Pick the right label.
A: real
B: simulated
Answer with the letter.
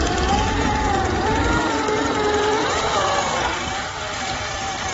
B